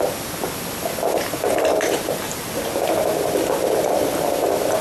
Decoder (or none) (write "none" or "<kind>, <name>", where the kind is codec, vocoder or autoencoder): vocoder, BigVGAN v2